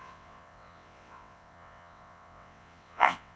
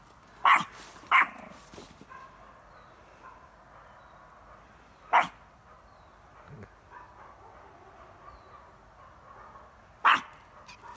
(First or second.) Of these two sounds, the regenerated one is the first